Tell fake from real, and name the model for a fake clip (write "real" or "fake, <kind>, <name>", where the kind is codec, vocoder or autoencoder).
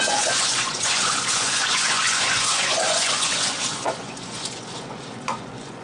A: fake, vocoder, Vocos